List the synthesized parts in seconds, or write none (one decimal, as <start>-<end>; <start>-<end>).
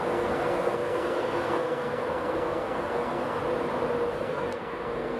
0.0-3.4; 4.1-5.2